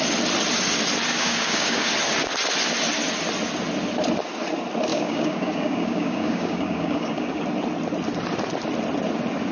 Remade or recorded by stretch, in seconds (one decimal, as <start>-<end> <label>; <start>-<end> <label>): 0.0-1.1 recorded; 1.1-1.9 remade; 1.9-4.9 recorded; 4.9-7.4 remade; 7.4-9.5 recorded